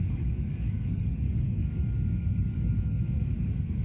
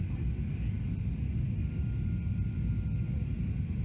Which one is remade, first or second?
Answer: first